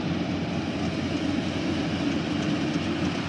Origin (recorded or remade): recorded